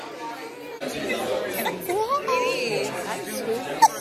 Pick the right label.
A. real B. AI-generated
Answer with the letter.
A